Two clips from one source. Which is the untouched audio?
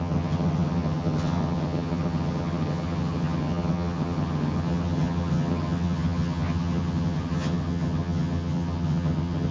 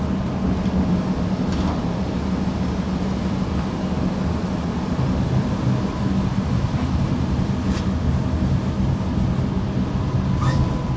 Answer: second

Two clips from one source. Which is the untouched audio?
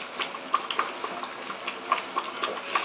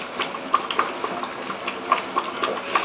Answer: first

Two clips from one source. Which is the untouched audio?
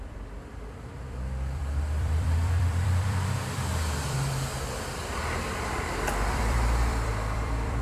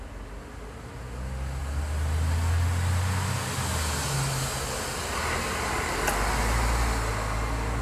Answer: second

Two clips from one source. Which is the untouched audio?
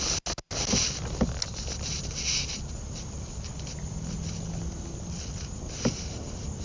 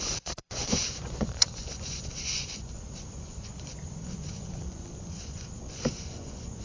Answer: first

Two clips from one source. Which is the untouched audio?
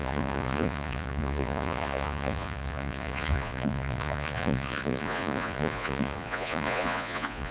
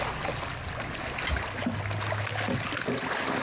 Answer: second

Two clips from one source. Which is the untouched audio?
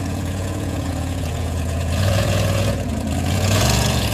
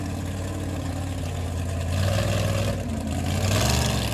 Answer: second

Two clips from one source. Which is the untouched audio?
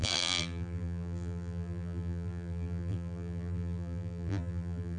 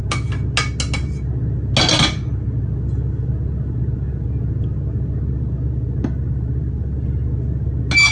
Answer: second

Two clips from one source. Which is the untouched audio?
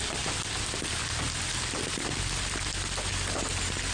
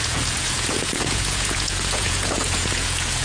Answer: first